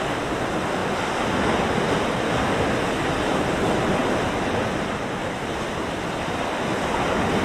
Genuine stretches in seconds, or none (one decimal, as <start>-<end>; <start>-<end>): 0.0-0.8; 2.3-5.2; 6.6-7.4